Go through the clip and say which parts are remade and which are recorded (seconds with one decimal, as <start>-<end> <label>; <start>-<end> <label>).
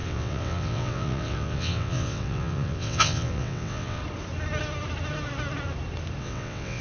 0.0-4.0 remade; 4.0-6.2 recorded; 6.2-6.8 remade